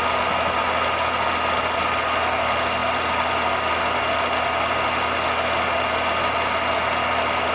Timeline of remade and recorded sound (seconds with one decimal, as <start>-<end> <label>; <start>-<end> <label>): 0.0-7.5 recorded